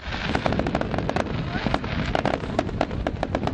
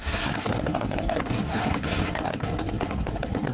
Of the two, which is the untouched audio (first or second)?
first